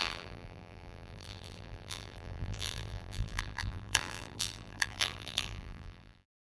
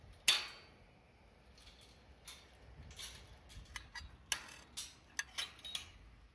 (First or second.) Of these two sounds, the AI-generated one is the first